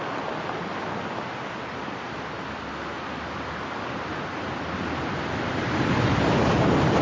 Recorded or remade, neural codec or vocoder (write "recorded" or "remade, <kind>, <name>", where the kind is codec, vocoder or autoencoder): recorded